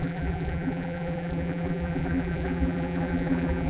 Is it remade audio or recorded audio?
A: remade